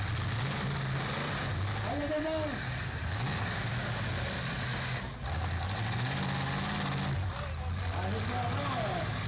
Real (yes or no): yes